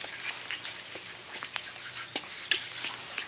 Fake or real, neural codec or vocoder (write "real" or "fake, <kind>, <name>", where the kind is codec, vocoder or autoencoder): real